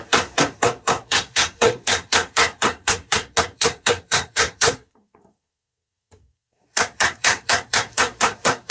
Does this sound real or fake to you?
fake